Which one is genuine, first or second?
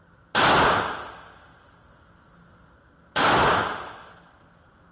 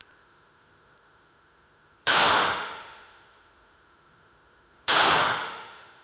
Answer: first